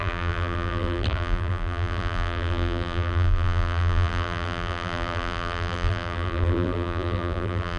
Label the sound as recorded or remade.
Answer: remade